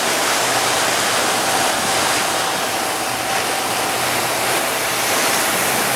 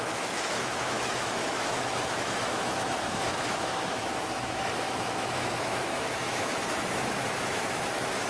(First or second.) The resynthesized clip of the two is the second